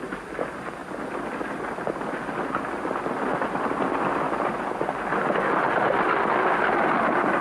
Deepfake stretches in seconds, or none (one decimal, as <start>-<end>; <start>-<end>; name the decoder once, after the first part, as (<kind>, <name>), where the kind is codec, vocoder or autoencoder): none

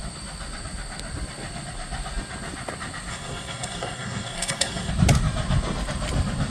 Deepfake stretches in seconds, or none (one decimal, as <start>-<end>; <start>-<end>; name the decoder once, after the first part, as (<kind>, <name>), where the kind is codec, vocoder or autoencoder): 3.1-4.9 (codec, SNAC)

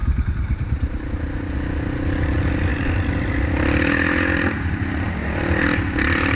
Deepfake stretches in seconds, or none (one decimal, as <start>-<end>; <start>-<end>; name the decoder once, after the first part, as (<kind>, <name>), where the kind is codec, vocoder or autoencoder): 0.0-1.0 (vocoder, BigVGAN v2)

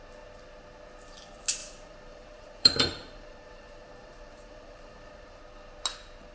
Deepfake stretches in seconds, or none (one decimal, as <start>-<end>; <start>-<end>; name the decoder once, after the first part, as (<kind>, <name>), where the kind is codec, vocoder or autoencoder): 1.6-5.4 (vocoder, BigVGAN v2)

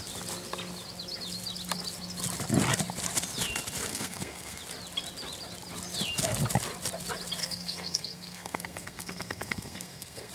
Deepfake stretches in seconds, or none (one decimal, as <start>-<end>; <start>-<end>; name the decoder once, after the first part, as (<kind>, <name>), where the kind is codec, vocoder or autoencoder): 3.9-4.6 (codec, SNAC); 7.4-10.3

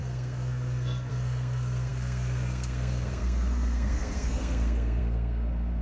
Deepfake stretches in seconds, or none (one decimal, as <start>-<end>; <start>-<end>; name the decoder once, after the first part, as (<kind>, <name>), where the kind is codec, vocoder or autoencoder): 0.0-5.8 (codec, SNAC)

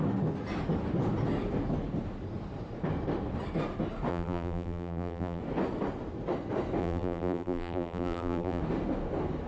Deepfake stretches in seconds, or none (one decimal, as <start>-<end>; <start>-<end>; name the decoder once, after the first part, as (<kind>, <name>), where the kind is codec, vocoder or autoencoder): 4.1-5.4 (vocoder, BigVGAN v2); 6.8-8.6